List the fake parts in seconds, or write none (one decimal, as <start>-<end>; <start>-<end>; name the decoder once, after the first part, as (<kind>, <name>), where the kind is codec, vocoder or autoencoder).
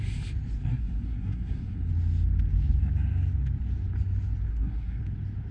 0.7-1.9 (codec, SNAC); 4.5-5.0